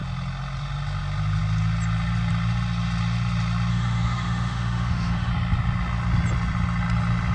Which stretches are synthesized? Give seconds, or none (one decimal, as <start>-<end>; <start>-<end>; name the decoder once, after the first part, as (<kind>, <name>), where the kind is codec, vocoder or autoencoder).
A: 3.7-5.3 (autoencoder, DAC-VAE)